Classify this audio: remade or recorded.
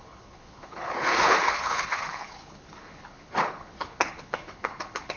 remade